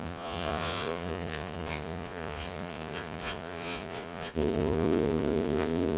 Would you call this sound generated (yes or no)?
yes